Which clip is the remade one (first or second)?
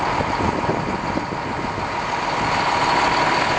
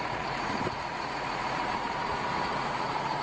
second